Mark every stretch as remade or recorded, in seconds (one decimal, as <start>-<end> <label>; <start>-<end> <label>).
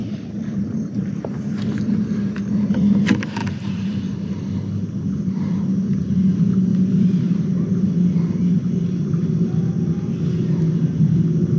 0.0-1.6 remade; 1.6-3.4 recorded; 3.4-4.1 remade; 4.1-6.7 recorded; 6.7-7.4 remade; 7.4-11.6 recorded